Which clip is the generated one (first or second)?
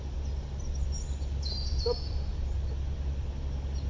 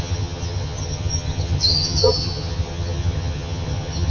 second